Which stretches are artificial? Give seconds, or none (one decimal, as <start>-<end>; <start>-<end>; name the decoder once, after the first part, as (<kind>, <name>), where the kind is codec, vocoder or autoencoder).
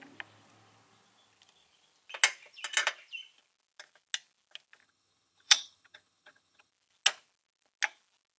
4.8-6.7 (vocoder, HiFi-GAN)